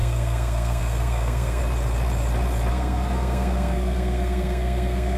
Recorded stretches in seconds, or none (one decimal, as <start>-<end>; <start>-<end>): 1.6-2.7